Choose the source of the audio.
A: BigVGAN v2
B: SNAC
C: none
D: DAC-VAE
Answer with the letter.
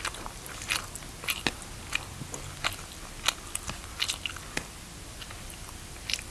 C